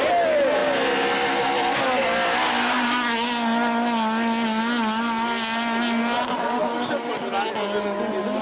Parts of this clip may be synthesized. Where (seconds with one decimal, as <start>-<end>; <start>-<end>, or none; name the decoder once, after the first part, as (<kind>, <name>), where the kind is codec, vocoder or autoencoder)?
none